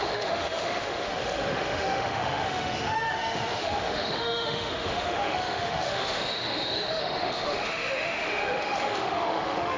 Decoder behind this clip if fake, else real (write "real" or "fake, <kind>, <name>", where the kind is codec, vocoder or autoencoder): fake, autoencoder, DAC-VAE